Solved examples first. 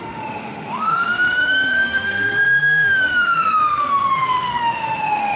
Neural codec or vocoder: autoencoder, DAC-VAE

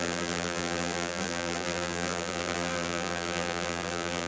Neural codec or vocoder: vocoder, BigVGAN v2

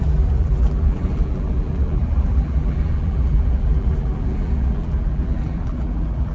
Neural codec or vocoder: vocoder, BigVGAN v2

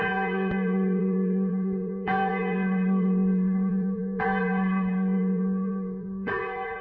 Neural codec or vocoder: vocoder, Vocos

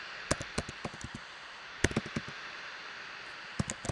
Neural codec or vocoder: none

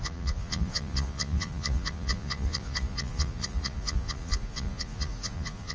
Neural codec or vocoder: vocoder, Vocos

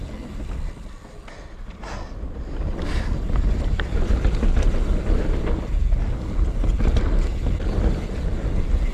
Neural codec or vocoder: none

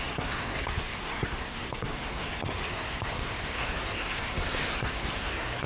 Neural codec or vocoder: codec, SNAC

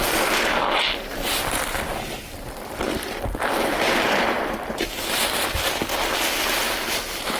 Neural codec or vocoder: vocoder, BigVGAN v2